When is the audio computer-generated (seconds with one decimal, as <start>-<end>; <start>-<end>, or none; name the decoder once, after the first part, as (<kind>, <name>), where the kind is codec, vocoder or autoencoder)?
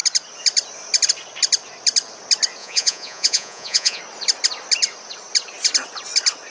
2.6-4.0 (vocoder, Vocos)